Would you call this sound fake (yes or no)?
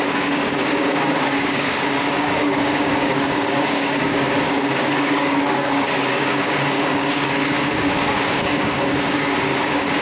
yes